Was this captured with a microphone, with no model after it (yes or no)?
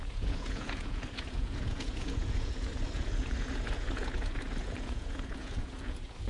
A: no